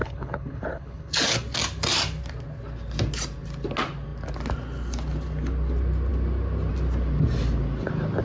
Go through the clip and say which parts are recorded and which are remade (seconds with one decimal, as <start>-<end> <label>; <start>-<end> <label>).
0.0-1.1 remade; 1.1-8.2 recorded